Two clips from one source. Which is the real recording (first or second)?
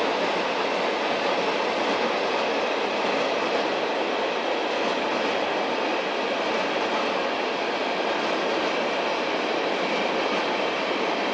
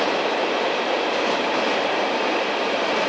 first